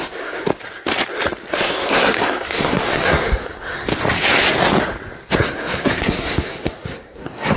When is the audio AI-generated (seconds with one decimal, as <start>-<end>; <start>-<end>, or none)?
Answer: 0.0-0.5; 1.5-3.9; 5.4-7.6